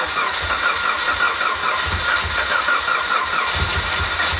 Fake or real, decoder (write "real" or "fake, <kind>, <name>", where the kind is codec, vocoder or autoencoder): real